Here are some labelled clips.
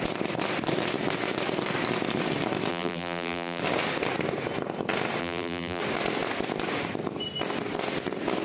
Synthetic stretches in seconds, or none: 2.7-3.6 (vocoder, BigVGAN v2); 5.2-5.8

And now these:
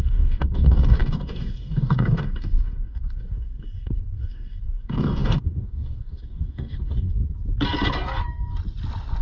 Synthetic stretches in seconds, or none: 0.0-7.2 (codec, DAC)

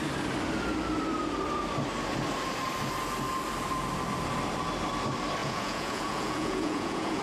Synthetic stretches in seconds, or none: 5.4-7.2 (vocoder, Vocos)